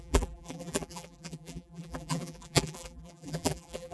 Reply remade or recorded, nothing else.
remade